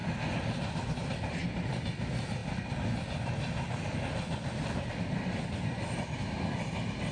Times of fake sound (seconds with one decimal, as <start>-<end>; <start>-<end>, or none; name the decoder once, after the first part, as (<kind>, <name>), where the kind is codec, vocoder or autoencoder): none